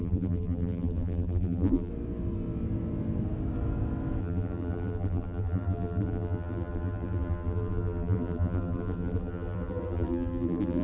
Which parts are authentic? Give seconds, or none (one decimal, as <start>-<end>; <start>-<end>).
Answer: 1.9-4.2